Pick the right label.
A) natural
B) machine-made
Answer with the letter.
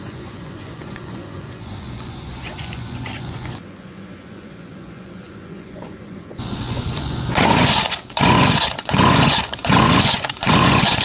B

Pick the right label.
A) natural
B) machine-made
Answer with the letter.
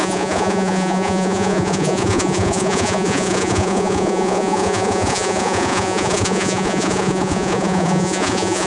B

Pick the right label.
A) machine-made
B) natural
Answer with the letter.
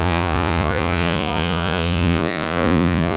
A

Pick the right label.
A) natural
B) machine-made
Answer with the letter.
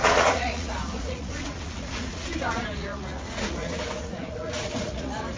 B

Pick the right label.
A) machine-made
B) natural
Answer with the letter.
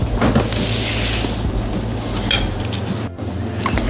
B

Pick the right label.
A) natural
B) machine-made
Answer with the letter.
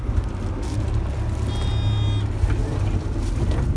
A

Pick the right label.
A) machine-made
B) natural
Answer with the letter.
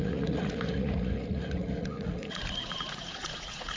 A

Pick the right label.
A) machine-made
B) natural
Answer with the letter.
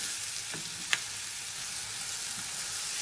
B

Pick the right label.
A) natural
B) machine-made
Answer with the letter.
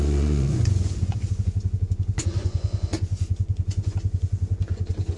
B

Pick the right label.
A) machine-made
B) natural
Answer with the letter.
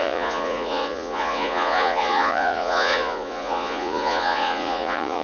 A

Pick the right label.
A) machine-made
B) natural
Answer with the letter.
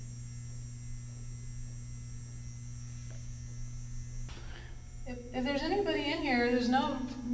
B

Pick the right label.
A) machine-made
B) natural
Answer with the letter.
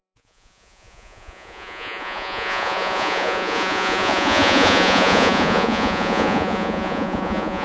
A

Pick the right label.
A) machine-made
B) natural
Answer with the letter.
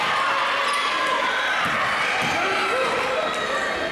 B